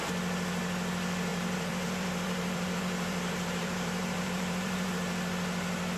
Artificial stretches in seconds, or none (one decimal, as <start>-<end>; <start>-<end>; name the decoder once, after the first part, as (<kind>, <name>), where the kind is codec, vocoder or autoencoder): 1.3-4.9 (vocoder, BigVGAN v2)

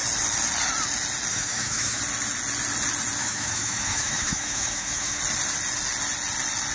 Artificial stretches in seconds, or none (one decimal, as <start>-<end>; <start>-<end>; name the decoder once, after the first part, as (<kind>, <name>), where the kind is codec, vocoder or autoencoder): 1.3-2.0 (autoencoder, DAC-VAE); 3.2-5.2

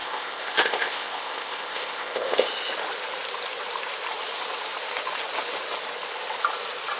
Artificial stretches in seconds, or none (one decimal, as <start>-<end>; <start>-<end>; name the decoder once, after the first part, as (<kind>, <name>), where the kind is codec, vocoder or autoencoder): 0.0-2.5 (codec, ZipCodec)

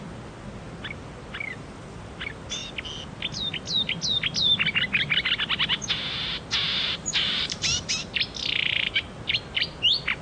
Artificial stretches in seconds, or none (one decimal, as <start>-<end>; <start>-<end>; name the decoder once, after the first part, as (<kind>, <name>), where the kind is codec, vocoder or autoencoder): 6.7-7.9 (vocoder, BigVGAN v2)

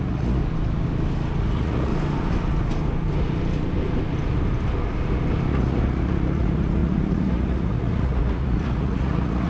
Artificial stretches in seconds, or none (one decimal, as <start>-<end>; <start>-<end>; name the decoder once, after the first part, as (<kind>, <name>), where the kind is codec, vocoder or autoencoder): 0.0-0.4 (vocoder, Vocos); 1.5-1.9; 5.5-9.5